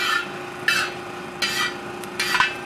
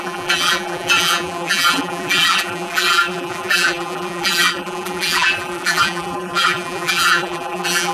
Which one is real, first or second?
first